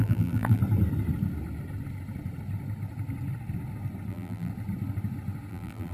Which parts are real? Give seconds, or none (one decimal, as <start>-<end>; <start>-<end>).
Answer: 0.6-4.1; 4.5-5.5